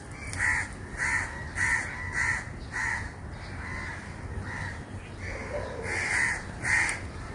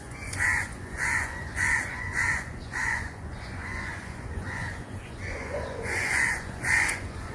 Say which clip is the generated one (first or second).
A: second